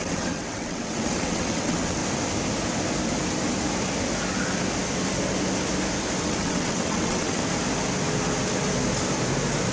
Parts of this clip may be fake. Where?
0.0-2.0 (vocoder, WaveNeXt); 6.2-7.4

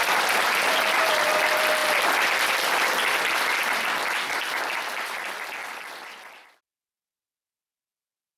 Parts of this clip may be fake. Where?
none

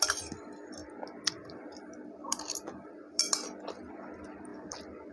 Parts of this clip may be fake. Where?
0.0-0.8 (vocoder, BigVGAN v2); 1.3-5.1

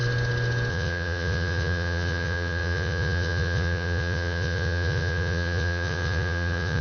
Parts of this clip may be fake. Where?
0.7-6.8 (vocoder, Vocos)

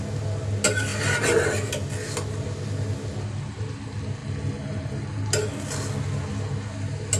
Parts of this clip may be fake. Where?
none

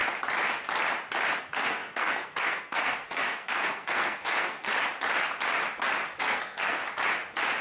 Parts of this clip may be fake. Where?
1.4-4.7 (codec, SNAC); 6.2-6.8

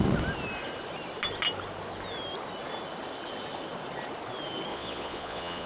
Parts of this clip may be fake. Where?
4.7-5.7 (vocoder, Vocos)

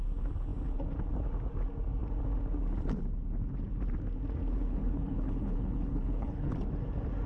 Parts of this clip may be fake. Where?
4.4-6.5 (codec, HILCodec)